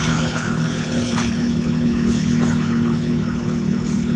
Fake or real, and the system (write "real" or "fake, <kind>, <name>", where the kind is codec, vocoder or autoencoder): fake, codec, HILCodec